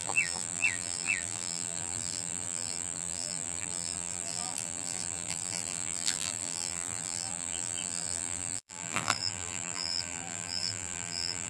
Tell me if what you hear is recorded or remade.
remade